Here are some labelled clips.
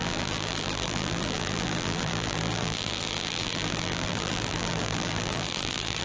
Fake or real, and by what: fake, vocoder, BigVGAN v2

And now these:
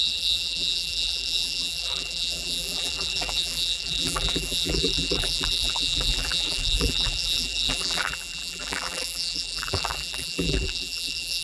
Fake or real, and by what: fake, vocoder, BigVGAN v2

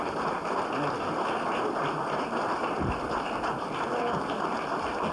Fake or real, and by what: fake, vocoder, BigVGAN v2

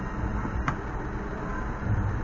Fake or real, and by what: real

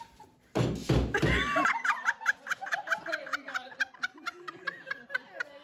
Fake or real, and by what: real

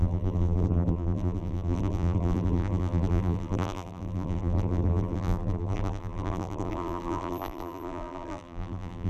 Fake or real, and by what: fake, vocoder, BigVGAN v2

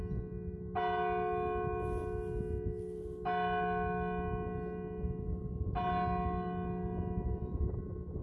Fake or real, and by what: real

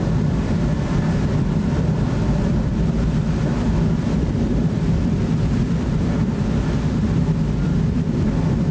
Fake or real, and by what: fake, vocoder, BigVGAN v2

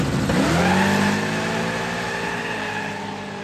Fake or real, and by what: real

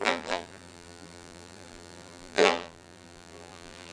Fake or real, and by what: fake, vocoder, BigVGAN v2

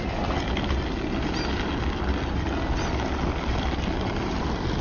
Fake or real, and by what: real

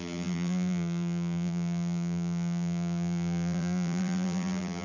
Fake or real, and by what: fake, vocoder, BigVGAN v2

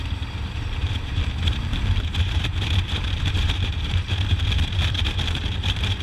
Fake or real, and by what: fake, vocoder, BigVGAN v2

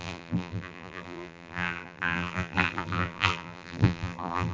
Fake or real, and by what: fake, vocoder, BigVGAN v2